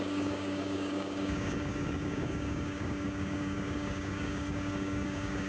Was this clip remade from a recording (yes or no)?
yes